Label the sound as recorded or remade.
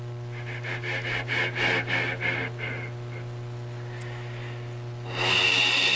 recorded